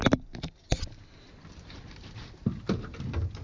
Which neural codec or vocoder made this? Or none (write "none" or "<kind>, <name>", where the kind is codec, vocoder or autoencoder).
none